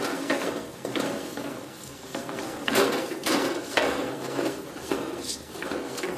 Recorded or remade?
remade